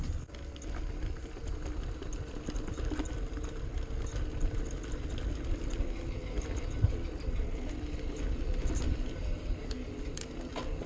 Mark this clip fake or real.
real